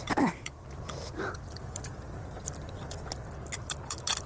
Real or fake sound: fake